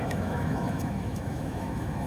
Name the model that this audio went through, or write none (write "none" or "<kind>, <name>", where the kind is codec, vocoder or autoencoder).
autoencoder, DAC-VAE